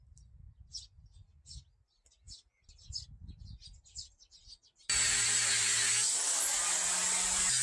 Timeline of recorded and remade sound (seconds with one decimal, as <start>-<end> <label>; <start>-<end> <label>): 0.0-7.6 recorded